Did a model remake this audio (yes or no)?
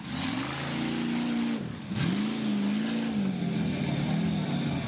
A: no